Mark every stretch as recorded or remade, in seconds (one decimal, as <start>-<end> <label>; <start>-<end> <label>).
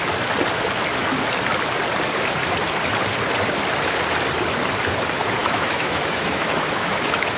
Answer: 0.0-5.4 recorded; 5.4-7.4 remade